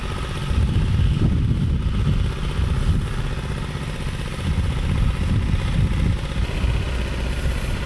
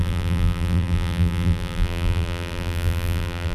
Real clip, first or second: first